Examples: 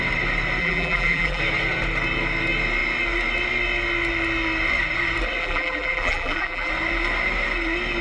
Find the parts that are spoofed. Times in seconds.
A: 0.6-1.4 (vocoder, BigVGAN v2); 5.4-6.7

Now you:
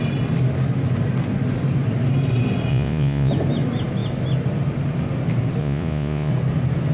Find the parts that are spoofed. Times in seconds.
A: 2.7-3.3 (vocoder, Vocos); 5.6-6.3

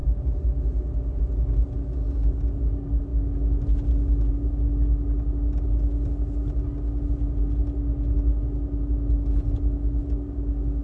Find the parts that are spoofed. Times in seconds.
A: 0.0-1.2 (vocoder, BigVGAN v2)

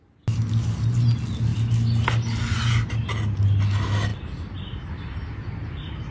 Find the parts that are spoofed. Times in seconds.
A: none

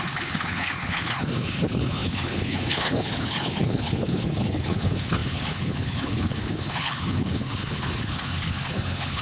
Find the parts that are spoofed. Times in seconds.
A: 0.0-9.2 (codec, HILCodec)

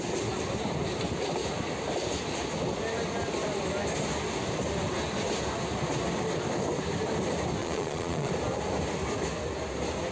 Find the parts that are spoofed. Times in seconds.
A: 7.6-8.3 (vocoder, Vocos)